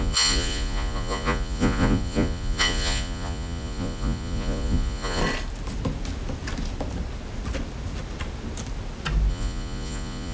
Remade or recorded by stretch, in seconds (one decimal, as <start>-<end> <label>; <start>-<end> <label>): 0.0-5.2 remade; 5.2-9.3 recorded; 9.3-10.3 remade

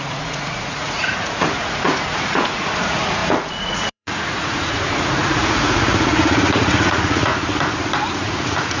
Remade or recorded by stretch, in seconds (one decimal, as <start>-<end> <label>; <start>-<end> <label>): 0.0-7.3 remade; 7.3-8.1 recorded; 8.1-8.8 remade